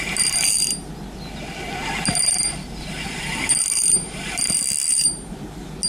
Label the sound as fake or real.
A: real